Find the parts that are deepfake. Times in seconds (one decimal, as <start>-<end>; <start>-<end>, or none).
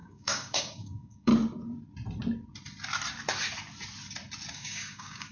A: 0.0-1.3; 4.5-5.3